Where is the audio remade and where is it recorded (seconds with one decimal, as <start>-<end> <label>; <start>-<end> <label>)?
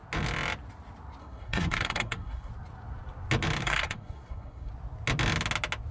0.0-1.2 recorded; 1.2-2.5 remade; 2.5-3.6 recorded; 3.6-4.7 remade; 4.7-5.9 recorded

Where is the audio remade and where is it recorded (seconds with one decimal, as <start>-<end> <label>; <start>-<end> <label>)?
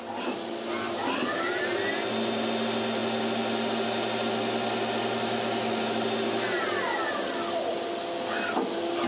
0.0-9.1 recorded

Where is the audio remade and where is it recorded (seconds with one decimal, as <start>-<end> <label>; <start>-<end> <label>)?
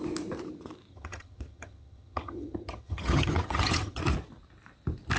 0.0-0.9 recorded; 0.9-4.0 remade; 4.0-5.2 recorded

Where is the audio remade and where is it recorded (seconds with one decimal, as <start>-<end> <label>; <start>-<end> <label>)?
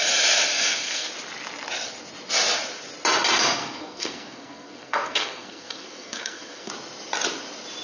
0.0-0.5 recorded; 0.5-1.1 remade; 1.1-3.6 recorded; 3.6-6.7 remade; 6.7-7.8 recorded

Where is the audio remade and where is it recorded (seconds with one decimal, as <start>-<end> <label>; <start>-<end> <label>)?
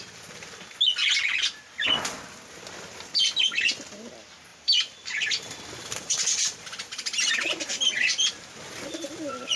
0.0-4.5 recorded; 4.5-7.3 remade; 7.3-9.6 recorded